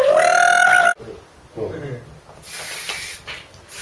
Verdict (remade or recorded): recorded